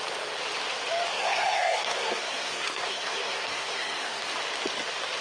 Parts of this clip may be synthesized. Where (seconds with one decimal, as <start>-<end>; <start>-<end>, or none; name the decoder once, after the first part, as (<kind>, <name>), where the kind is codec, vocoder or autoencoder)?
1.1-4.2 (codec, SNAC)